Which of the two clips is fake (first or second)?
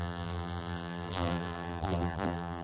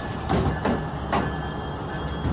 first